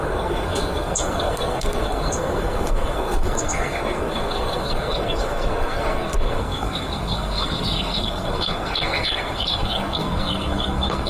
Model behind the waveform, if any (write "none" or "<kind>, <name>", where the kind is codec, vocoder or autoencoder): codec, SNAC